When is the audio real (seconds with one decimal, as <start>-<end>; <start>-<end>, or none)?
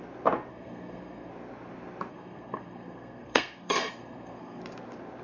0.0-0.5; 1.3-2.1; 4.6-5.2